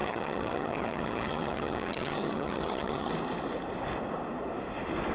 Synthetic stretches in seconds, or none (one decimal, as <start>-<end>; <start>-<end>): 0.0-3.1